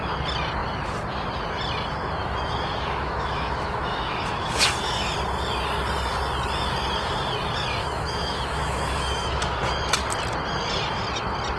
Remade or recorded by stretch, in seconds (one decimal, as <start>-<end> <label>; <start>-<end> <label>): 0.0-2.2 recorded; 2.2-5.0 remade; 5.0-7.8 recorded; 7.8-9.6 remade; 9.6-11.6 recorded

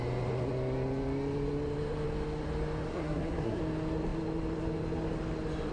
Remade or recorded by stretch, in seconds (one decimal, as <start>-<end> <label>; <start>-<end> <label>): 0.0-2.9 recorded; 2.9-3.6 remade; 3.6-5.7 recorded

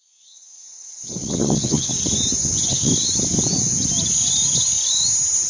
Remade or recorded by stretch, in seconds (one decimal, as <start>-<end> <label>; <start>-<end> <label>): 0.0-1.9 remade; 1.9-2.4 recorded; 2.4-2.9 remade; 2.9-5.5 recorded

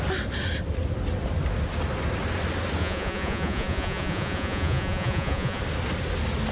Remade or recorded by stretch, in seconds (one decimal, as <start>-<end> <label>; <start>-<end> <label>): 0.0-2.8 recorded; 2.8-5.6 remade; 5.6-6.5 recorded

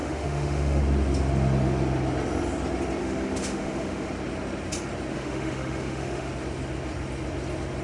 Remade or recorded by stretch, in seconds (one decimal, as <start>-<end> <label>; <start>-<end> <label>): 0.0-0.8 remade; 0.8-3.0 recorded; 3.0-4.1 remade; 4.1-5.1 recorded; 5.1-6.3 remade; 6.3-7.8 recorded